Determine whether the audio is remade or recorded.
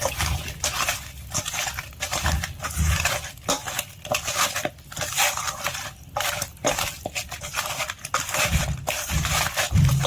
recorded